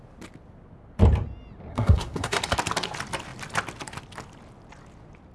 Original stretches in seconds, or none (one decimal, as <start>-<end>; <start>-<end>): 0.0-1.7; 2.4-5.3